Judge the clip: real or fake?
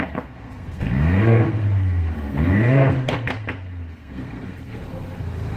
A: fake